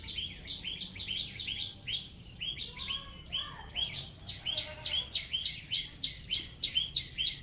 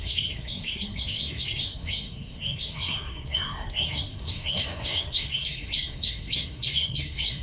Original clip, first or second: first